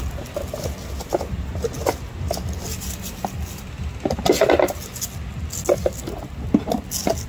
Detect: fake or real real